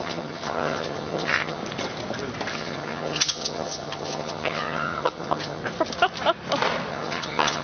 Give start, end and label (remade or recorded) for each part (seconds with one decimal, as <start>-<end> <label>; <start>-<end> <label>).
0.0-1.6 remade; 1.6-2.5 recorded; 2.5-5.6 remade; 5.6-6.9 recorded; 6.9-7.6 remade

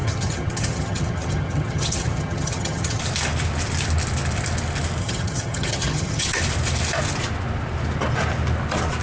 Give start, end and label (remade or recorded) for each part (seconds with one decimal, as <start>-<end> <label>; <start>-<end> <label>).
0.0-3.0 remade; 3.0-5.0 recorded; 5.0-6.4 remade; 6.4-9.0 recorded

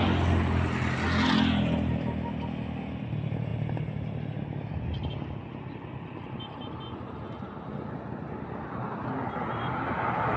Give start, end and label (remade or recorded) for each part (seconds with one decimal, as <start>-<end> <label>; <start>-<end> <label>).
0.0-10.4 recorded

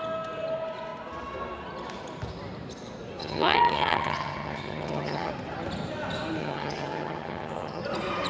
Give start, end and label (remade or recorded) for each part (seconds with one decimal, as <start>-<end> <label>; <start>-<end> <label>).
0.0-3.2 recorded; 3.2-5.3 remade; 5.3-6.4 recorded; 6.4-7.8 remade; 7.8-8.3 recorded

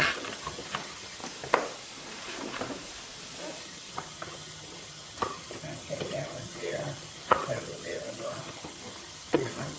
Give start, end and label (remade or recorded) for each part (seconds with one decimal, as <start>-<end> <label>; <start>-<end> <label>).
0.0-1.2 remade; 1.2-3.6 recorded; 3.6-9.8 remade